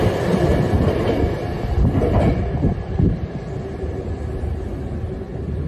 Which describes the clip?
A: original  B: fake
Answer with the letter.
A